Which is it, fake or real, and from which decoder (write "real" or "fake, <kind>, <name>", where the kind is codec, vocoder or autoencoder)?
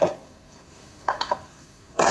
fake, codec, SNAC